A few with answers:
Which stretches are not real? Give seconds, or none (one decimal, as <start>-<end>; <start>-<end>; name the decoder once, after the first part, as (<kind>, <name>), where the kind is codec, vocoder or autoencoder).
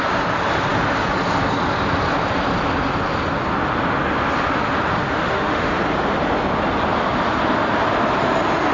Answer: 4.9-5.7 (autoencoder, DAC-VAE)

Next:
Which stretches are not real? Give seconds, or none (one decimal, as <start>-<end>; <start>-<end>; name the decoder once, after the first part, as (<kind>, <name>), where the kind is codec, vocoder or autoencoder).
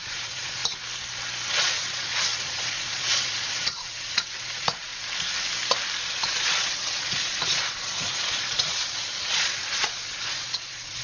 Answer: 0.0-0.6 (vocoder, Vocos); 1.5-4.9; 6.1-11.0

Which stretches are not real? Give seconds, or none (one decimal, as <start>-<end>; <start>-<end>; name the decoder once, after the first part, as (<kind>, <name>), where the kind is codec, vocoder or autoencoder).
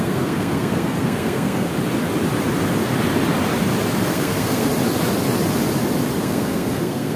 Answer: 0.0-1.7 (codec, SNAC); 4.1-4.7; 6.2-7.2